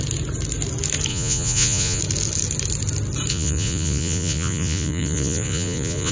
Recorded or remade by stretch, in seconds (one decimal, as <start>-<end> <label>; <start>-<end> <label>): 0.0-1.1 recorded; 1.1-2.0 remade; 2.0-3.3 recorded; 3.3-6.1 remade